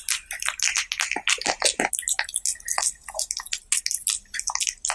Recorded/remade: recorded